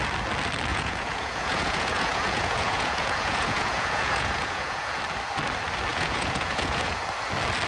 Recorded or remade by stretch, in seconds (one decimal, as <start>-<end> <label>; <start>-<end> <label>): 0.0-0.7 recorded; 0.7-5.0 remade; 5.0-5.9 recorded; 5.9-7.0 remade; 7.0-7.7 recorded